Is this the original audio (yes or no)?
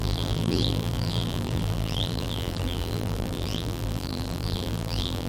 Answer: no